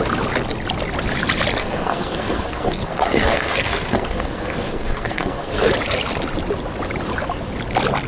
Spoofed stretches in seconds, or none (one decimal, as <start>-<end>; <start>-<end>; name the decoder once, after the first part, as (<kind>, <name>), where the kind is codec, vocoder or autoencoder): 1.6-5.7 (codec, SNAC)